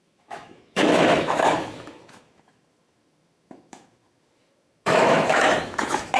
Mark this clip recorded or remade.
remade